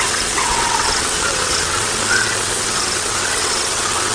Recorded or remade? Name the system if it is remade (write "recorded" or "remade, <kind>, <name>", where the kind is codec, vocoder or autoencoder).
remade, vocoder, WaveNeXt